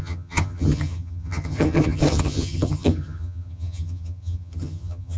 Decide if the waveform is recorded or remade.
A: remade